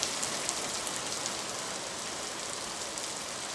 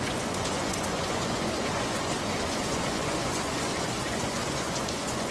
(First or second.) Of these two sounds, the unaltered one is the first